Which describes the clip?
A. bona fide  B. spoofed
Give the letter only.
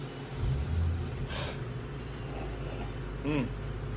A